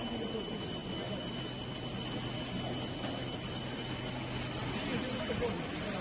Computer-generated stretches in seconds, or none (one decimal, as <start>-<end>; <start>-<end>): none